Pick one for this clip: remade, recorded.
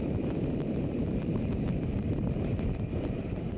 remade